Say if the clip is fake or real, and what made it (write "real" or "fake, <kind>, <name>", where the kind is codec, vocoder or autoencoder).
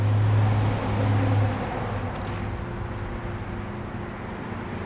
real